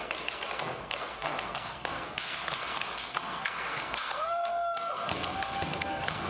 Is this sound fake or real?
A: fake